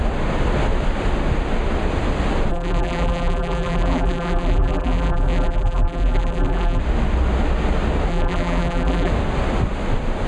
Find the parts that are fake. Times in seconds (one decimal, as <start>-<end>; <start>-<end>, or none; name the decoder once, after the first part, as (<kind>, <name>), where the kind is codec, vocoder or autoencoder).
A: 2.5-6.8 (vocoder, BigVGAN v2); 8.1-9.1